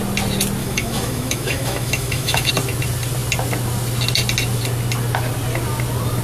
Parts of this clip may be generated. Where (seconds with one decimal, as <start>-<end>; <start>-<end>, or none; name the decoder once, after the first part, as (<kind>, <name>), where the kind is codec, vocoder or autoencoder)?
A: 0.6-2.5 (autoencoder, DAC-VAE)